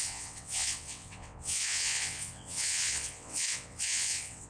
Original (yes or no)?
no